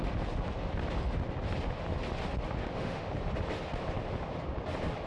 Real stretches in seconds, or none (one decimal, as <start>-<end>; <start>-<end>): 0.0-2.6; 3.1-5.1